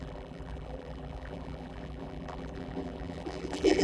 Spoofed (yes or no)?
yes